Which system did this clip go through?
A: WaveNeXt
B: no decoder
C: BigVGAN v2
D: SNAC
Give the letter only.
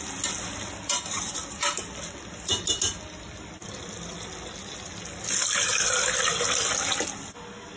B